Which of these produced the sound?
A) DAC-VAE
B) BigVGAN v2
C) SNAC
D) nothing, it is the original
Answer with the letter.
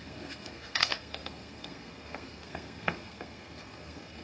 C